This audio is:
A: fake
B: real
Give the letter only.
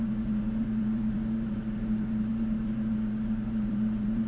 A